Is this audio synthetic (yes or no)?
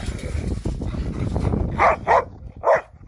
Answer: no